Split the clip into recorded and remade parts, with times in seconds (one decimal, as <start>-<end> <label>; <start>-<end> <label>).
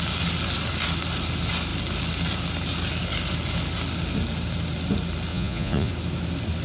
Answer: 0.0-5.3 recorded; 5.3-5.9 remade; 5.9-6.6 recorded